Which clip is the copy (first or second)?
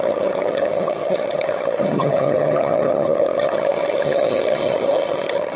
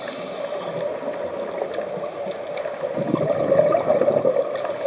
first